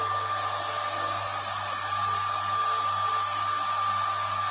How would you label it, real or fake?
real